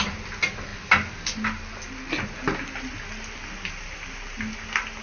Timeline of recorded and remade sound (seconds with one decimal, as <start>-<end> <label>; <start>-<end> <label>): 0.0-5.0 recorded